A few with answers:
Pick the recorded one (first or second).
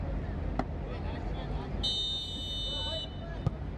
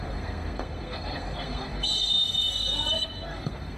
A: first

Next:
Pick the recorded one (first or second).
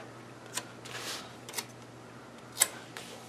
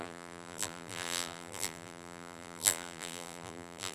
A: first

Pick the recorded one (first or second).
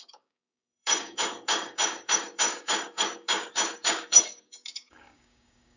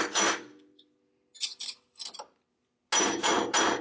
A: second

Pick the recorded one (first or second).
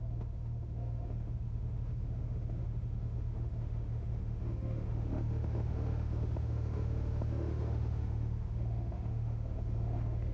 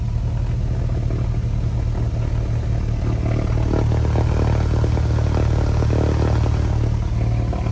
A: second